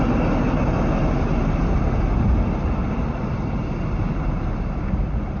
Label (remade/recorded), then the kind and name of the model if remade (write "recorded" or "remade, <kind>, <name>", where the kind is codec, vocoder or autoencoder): recorded